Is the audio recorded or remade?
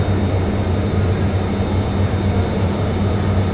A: recorded